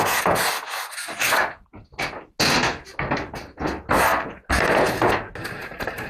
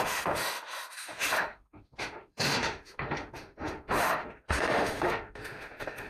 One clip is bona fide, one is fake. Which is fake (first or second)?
second